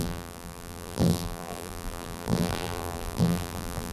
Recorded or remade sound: remade